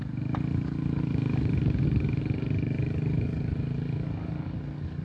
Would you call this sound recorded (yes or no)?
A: no